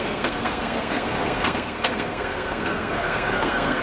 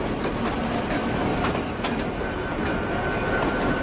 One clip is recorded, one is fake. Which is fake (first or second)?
first